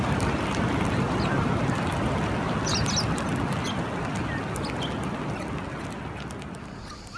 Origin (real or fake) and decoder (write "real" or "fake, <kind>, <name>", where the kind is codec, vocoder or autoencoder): real